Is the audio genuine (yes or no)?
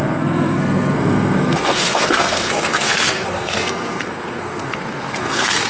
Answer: no